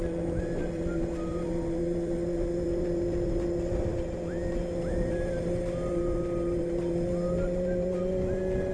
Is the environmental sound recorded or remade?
remade